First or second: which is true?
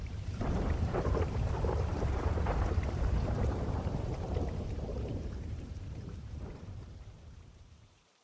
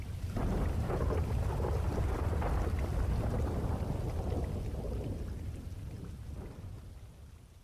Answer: second